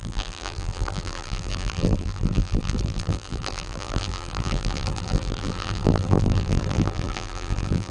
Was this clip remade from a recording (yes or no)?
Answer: yes